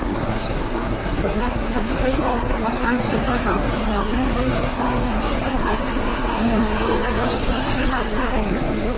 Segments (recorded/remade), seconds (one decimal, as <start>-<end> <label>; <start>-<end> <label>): 0.0-9.0 remade